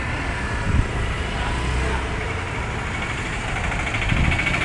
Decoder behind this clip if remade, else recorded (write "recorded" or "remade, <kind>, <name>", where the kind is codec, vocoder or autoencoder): recorded